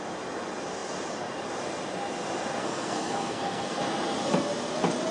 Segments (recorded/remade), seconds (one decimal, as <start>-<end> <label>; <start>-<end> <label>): 0.0-2.6 recorded; 2.6-3.8 remade; 3.8-5.1 recorded